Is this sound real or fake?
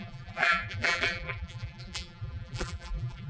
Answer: fake